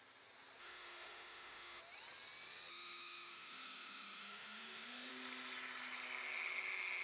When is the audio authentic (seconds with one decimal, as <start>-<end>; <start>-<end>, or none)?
0.0-0.6; 1.8-2.7; 5.1-7.0